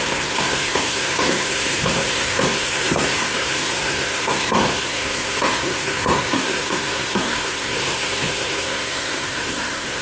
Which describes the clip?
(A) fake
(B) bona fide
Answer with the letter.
A